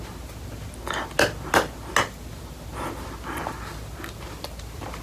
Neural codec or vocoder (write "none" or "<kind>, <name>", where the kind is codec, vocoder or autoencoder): none